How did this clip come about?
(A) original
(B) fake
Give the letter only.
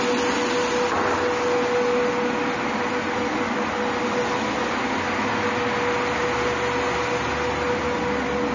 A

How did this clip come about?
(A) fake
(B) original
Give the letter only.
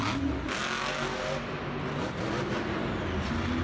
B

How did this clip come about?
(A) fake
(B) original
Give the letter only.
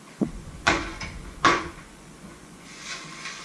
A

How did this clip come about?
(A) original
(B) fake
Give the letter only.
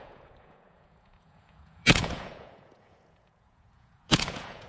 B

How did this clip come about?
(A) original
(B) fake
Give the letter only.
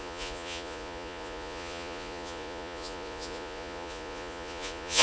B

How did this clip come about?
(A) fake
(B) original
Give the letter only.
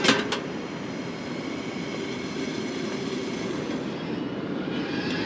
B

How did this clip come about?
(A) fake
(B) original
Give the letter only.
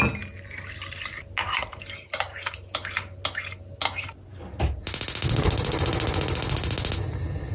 B